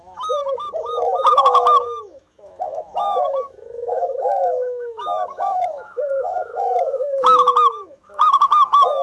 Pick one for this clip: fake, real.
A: fake